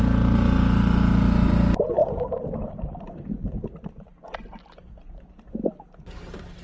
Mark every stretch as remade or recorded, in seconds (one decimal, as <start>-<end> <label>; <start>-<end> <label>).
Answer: 0.0-2.0 recorded; 2.0-4.6 remade; 4.6-6.6 recorded